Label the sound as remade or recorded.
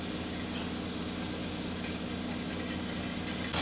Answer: recorded